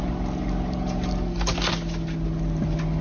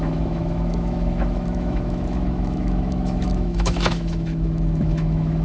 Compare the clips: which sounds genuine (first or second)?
first